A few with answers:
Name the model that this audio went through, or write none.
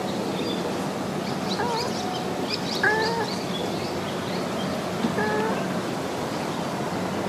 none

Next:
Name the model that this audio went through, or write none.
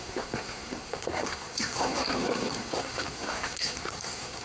codec, SNAC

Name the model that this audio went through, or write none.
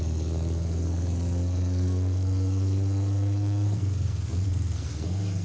codec, SNAC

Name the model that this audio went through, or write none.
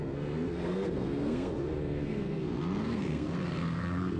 codec, SNAC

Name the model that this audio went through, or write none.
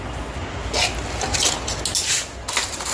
none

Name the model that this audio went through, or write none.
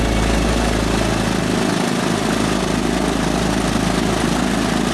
none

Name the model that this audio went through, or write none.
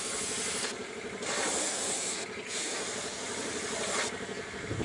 none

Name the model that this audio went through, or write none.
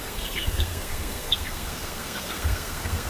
codec, SNAC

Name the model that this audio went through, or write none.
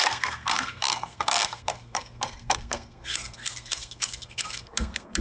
codec, SNAC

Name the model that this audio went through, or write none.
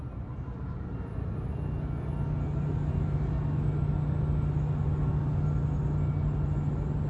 none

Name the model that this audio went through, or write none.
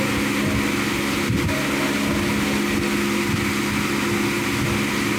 none